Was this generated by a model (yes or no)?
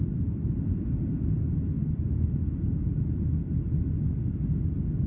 no